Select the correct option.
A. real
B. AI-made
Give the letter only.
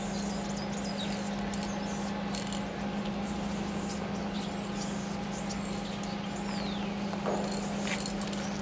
A